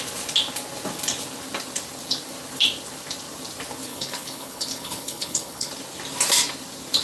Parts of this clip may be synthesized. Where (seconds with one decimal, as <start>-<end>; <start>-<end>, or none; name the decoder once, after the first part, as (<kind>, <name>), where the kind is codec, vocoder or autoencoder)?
3.9-5.7 (codec, HILCodec)

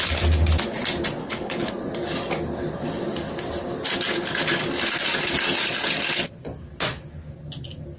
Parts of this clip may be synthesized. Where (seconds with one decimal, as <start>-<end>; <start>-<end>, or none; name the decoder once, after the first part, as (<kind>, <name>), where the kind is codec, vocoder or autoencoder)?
1.2-1.7 (codec, HILCodec)

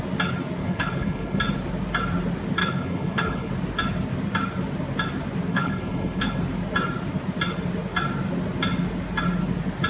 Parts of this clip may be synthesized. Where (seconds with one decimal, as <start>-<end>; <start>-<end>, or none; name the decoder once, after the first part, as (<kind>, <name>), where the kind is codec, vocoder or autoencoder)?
0.6-1.4 (codec, HILCodec); 2.6-3.5; 5.5-6.4